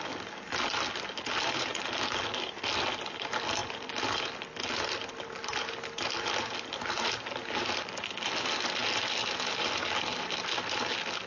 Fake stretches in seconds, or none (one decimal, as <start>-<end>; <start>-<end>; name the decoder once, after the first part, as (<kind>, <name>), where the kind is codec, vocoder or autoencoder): none